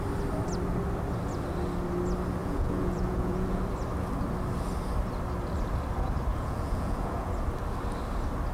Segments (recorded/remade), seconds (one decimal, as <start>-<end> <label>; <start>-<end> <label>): 0.0-2.4 recorded; 2.4-3.6 remade; 3.6-6.3 recorded; 6.3-7.3 remade; 7.3-8.5 recorded